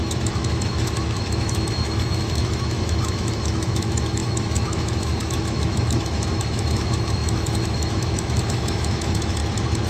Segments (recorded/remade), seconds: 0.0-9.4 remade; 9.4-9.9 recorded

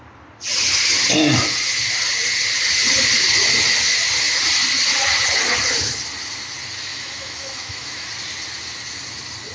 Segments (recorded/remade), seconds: 0.0-6.9 recorded; 6.9-8.1 remade; 8.1-9.5 recorded

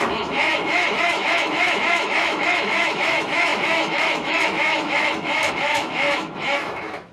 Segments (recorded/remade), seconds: 0.0-7.1 remade

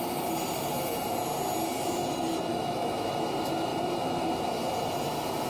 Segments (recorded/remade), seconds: 0.0-2.5 recorded; 2.5-3.0 remade; 3.0-5.5 recorded